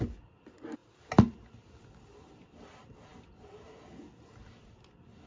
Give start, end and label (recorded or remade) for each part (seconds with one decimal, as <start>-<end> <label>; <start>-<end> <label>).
0.0-5.3 recorded